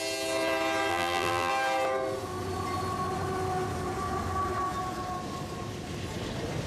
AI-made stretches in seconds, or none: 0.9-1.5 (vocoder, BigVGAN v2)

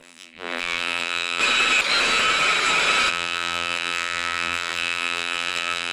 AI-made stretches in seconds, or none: 0.0-1.4 (vocoder, BigVGAN v2); 3.1-5.9

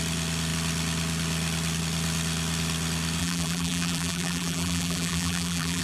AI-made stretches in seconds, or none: 3.2-5.8 (vocoder, BigVGAN v2)

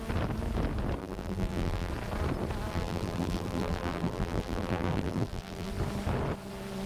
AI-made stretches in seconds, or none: 1.0-1.9 (vocoder, BigVGAN v2); 2.7-5.7